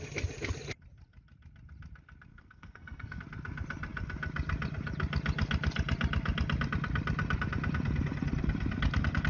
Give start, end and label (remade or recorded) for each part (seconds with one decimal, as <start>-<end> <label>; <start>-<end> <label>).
0.0-2.3 recorded; 2.3-3.2 remade; 3.2-9.3 recorded